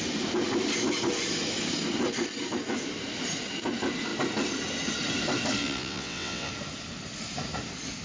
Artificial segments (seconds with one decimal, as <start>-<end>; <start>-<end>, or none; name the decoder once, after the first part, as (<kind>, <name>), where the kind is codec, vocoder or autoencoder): 5.6-6.5 (vocoder, WaveNeXt)